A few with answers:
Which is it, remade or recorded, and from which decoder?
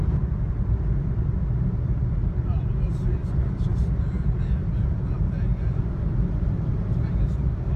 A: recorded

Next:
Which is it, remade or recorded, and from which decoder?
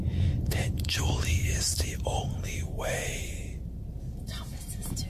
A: remade, vocoder, BigVGAN v2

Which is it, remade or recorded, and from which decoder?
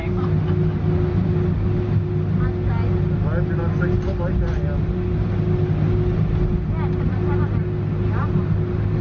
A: recorded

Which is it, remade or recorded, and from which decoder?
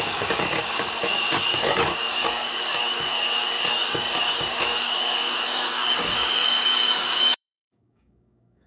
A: remade, codec, DAC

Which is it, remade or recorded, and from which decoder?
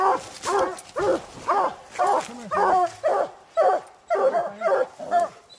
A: recorded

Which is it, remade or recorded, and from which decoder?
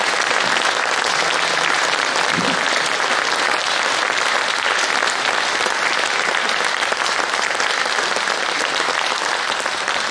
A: recorded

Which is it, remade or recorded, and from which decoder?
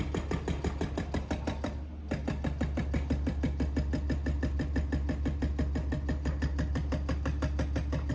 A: recorded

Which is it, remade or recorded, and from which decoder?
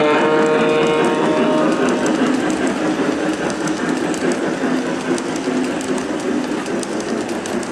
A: recorded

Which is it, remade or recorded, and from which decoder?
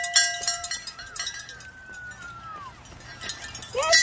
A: recorded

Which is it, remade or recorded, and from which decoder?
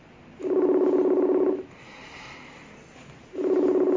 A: recorded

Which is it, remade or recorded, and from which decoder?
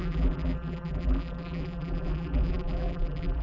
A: remade, vocoder, BigVGAN v2